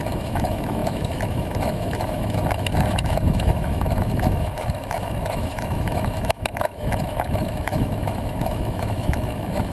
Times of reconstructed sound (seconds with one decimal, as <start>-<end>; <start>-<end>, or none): 0.0-9.7